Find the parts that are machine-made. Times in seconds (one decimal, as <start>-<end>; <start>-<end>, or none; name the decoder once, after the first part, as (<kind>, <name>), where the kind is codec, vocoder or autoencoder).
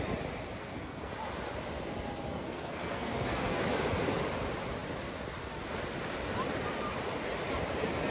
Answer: 0.6-1.1 (codec, SNAC); 2.3-3.6